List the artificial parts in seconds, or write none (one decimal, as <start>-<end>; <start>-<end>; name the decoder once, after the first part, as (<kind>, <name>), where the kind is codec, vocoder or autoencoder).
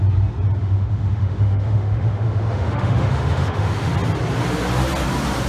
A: 0.6-3.9 (autoencoder, DAC-VAE)